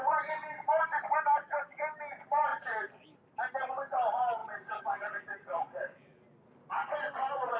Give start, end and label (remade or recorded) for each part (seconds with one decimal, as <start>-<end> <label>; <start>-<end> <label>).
0.0-2.5 recorded; 2.5-3.7 remade; 3.7-4.4 recorded; 4.4-6.4 remade; 6.4-7.6 recorded